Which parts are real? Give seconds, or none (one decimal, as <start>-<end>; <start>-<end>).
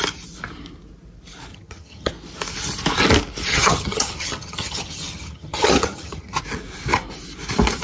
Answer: 0.0-1.5; 2.1-3.5; 6.4-7.8